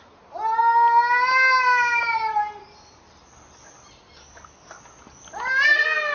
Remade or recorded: recorded